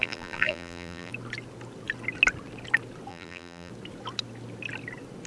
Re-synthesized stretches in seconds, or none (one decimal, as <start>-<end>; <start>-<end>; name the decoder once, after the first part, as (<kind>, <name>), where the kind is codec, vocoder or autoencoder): 0.0-1.1 (vocoder, BigVGAN v2); 3.1-3.7